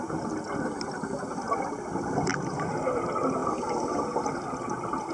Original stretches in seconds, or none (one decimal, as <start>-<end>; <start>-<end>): 0.0-3.4